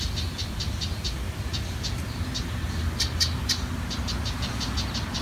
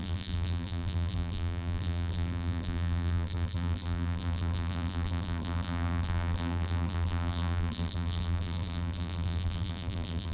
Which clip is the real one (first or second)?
first